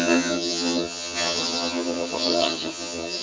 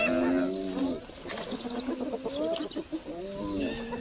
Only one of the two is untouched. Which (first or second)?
second